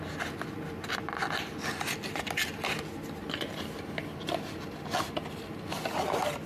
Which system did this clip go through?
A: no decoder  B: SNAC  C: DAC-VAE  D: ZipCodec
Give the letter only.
A